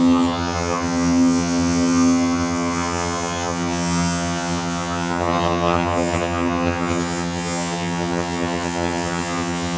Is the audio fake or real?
fake